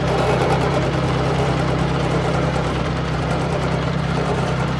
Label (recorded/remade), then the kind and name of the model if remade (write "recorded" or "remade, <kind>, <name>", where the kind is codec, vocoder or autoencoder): remade, vocoder, BigVGAN v2